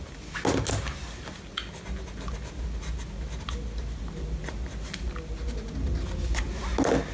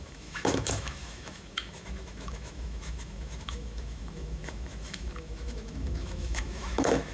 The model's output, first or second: second